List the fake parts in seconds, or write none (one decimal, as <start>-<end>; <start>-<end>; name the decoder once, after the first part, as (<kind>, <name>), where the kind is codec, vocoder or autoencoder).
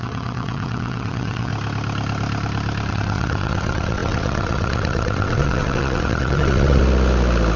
0.0-1.5 (vocoder, WaveNeXt); 2.9-6.8